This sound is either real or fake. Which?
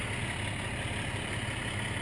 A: real